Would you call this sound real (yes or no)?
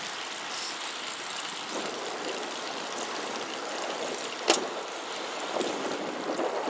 no